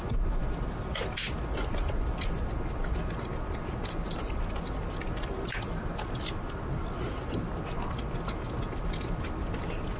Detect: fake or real real